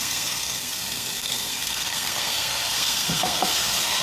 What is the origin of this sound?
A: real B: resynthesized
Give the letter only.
B